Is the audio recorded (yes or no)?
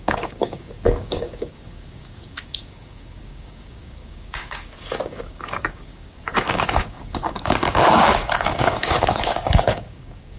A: no